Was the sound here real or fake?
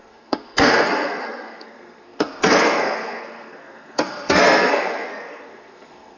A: fake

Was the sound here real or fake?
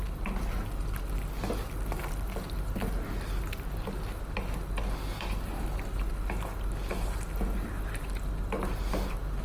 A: real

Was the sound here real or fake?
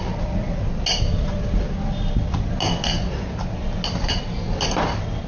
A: real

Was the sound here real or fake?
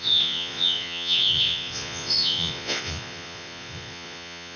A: fake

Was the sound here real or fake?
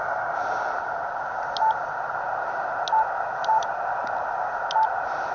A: real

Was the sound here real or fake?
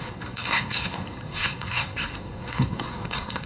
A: fake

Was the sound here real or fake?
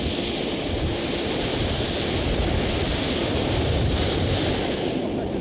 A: real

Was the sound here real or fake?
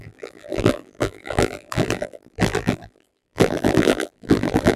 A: fake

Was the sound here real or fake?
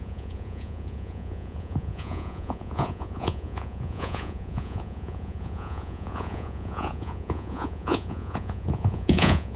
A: fake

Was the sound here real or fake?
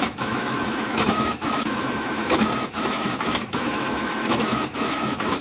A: fake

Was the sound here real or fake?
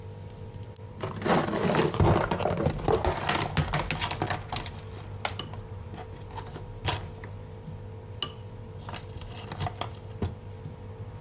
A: real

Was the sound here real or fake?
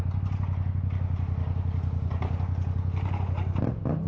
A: real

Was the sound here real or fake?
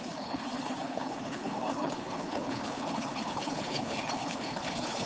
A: fake